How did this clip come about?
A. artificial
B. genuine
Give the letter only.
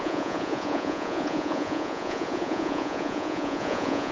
A